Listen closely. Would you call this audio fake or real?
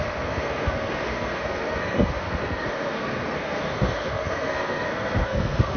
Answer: fake